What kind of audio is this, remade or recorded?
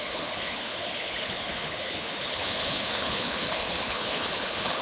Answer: remade